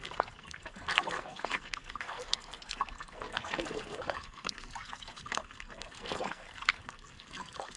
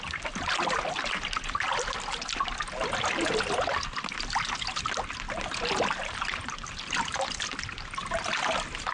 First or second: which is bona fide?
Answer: second